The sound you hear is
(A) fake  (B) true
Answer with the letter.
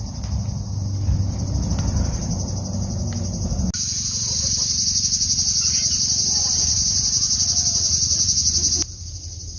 B